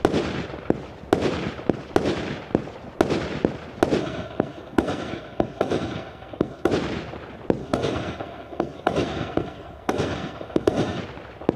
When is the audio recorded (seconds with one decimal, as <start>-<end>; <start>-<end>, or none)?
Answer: 0.0-4.0; 6.7-7.6; 11.0-11.6